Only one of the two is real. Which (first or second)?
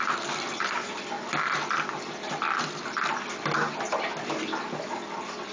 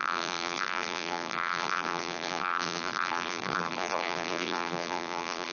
first